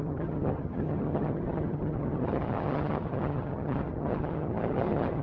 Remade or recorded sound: remade